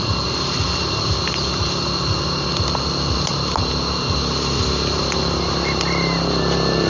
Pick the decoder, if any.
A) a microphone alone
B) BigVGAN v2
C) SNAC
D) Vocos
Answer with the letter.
A